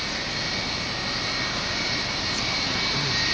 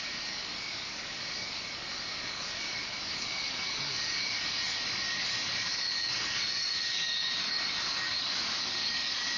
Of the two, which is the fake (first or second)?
second